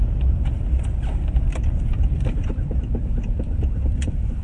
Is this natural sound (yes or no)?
no